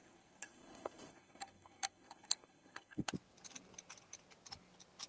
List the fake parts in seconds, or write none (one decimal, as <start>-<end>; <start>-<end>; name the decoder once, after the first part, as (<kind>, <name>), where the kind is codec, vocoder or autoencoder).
0.0-3.1 (codec, SNAC)